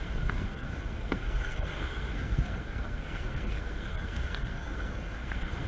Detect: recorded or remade remade